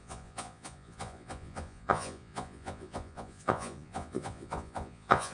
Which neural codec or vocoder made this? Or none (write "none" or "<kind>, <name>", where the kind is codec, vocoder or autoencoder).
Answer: vocoder, Vocos